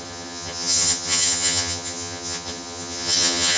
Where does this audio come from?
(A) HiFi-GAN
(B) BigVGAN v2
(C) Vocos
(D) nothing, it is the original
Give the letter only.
A